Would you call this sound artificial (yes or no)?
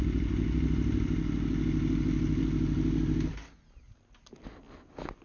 no